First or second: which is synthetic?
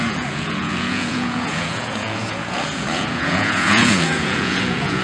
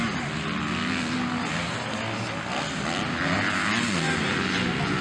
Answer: first